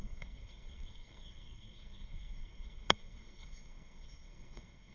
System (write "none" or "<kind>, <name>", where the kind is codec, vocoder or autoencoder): codec, SNAC